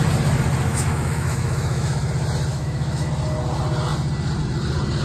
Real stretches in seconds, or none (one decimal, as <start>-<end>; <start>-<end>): 0.0-0.7; 2.1-2.5; 3.1-5.0